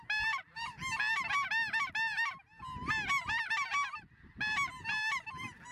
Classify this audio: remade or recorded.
recorded